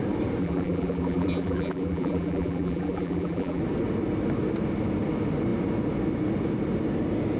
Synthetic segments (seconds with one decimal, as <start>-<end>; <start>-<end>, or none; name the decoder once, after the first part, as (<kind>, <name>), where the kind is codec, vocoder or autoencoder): 0.4-3.6 (vocoder, BigVGAN v2)